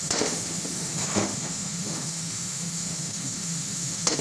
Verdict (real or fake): fake